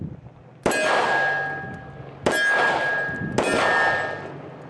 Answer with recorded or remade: recorded